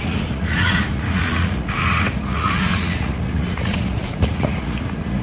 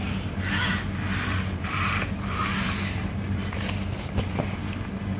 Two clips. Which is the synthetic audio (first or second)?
first